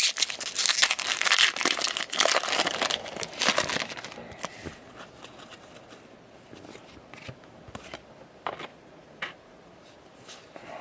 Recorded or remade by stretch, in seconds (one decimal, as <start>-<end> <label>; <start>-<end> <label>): 0.0-8.7 recorded; 8.7-9.9 remade; 9.9-10.8 recorded